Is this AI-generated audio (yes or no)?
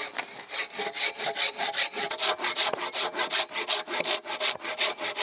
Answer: no